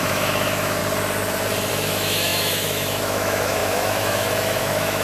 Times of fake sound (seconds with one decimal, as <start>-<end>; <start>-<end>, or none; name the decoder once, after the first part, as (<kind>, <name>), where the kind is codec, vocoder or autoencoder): 0.0-0.8 (autoencoder, DAC-VAE); 1.7-5.0